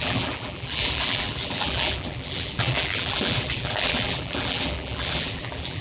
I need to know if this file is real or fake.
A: fake